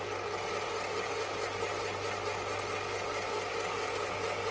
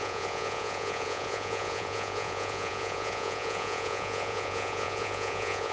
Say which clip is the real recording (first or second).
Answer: first